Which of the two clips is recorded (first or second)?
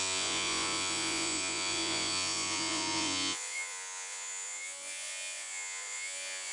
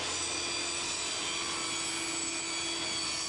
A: second